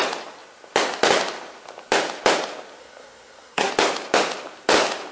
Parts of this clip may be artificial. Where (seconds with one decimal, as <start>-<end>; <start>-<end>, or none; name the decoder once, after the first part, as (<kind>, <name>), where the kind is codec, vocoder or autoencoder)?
2.8-3.7 (codec, SNAC)